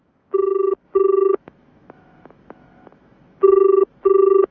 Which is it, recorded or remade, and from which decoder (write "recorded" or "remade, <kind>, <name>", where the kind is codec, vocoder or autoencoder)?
remade, autoencoder, DAC-VAE